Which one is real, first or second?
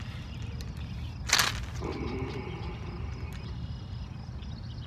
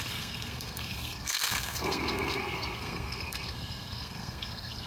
first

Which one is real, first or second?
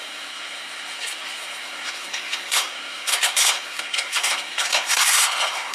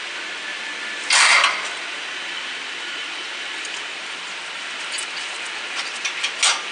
second